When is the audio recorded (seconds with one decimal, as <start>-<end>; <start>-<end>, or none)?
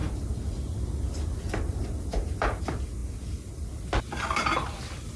0.0-5.2